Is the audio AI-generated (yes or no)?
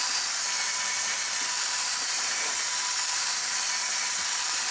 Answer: no